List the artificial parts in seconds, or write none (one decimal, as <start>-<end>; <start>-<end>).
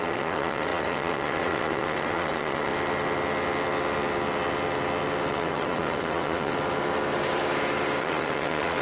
0.0-2.7; 5.3-6.5; 8.0-8.8